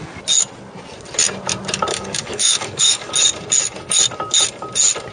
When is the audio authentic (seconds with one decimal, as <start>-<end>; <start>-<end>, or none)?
0.0-1.9; 3.1-5.1